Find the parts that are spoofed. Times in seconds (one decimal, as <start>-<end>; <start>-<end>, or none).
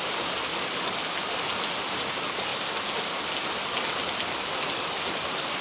none